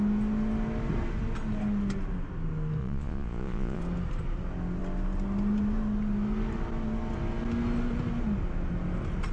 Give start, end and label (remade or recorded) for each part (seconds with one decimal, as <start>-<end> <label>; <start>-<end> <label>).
0.0-2.8 recorded; 2.8-3.8 remade; 3.8-9.3 recorded